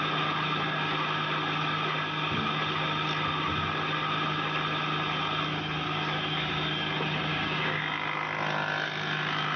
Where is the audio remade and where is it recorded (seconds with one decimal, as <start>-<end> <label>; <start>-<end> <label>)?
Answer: 0.0-7.3 recorded; 7.3-7.8 remade; 7.8-9.6 recorded